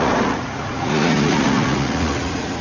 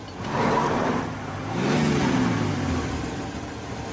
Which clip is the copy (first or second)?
first